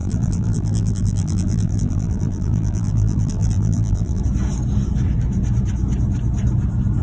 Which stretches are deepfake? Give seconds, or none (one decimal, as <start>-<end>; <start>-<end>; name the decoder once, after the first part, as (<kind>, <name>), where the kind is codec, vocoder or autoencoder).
0.0-4.2 (vocoder, BigVGAN v2)